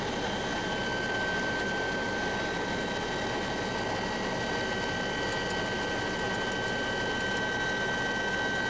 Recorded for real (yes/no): yes